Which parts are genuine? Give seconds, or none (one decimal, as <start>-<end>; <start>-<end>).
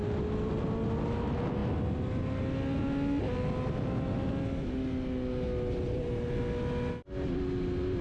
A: 0.0-8.0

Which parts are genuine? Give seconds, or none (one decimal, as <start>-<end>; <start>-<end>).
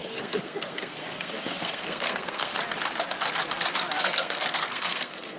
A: 2.5-4.0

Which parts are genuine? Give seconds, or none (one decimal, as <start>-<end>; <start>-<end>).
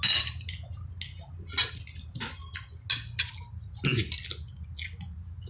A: 0.0-5.5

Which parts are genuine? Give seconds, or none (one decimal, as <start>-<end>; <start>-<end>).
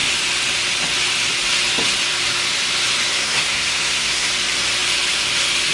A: 0.0-3.1; 4.3-5.7